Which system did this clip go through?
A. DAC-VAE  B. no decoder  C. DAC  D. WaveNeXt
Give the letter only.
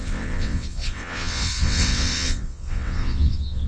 D